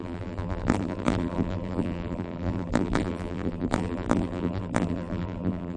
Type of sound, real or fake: fake